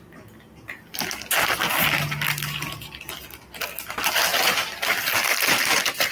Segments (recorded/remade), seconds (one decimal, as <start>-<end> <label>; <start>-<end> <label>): 0.0-6.1 recorded